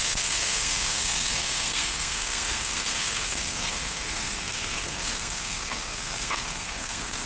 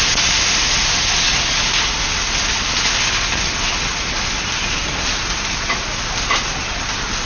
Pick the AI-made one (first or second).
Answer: first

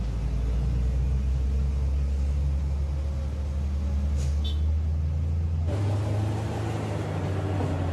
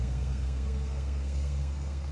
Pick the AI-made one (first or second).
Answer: second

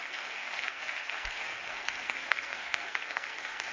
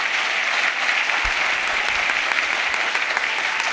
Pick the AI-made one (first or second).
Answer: first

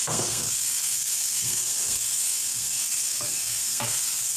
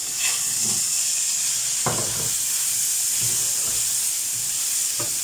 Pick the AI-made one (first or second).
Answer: first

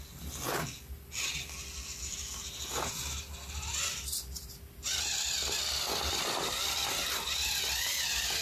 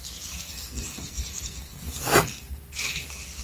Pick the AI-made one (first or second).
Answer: second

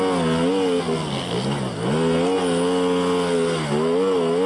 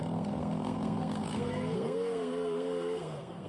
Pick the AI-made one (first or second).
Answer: second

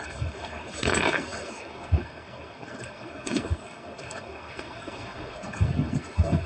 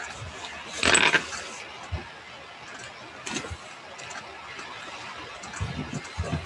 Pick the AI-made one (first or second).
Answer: first